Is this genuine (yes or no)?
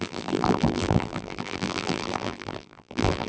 no